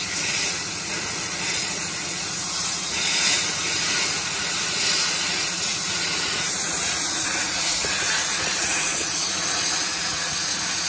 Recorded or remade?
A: remade